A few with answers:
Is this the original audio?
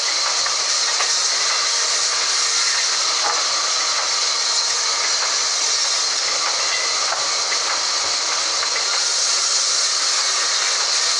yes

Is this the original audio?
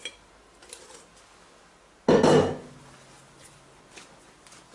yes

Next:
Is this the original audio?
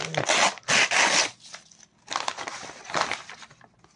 yes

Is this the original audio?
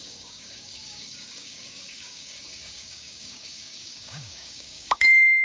no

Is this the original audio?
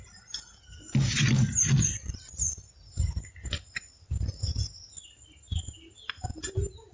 yes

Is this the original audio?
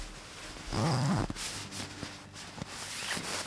yes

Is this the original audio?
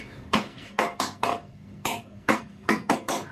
no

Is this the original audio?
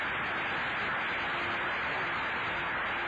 yes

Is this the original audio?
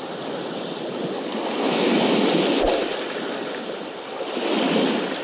yes